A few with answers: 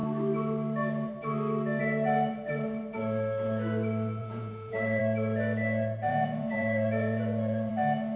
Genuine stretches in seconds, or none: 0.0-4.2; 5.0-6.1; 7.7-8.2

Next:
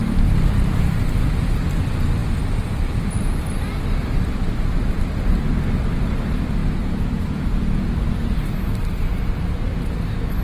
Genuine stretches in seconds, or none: 0.0-10.4